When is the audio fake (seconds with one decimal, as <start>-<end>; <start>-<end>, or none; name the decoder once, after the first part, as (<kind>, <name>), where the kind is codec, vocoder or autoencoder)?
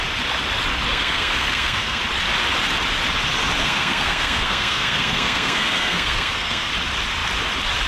0.9-2.0 (codec, SNAC); 3.6-6.7